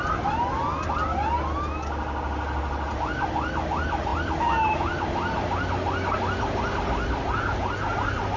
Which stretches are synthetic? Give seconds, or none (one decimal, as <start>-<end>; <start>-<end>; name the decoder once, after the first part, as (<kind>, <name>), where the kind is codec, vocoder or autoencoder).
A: none